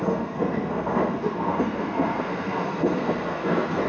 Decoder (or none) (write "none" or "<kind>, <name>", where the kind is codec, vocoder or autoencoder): codec, SNAC